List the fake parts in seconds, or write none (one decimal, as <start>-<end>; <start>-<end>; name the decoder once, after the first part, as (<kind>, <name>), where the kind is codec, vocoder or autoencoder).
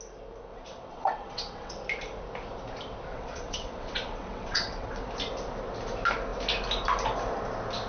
0.5-1.8 (vocoder, WaveNeXt); 3.1-5.0